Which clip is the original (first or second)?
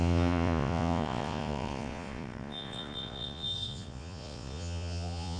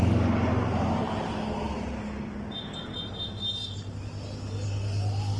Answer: second